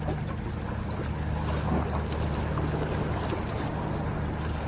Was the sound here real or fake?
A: real